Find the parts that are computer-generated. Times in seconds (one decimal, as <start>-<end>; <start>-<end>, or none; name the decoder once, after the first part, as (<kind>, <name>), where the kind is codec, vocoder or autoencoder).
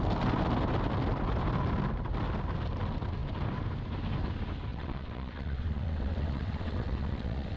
4.7-7.6 (vocoder, WaveNeXt)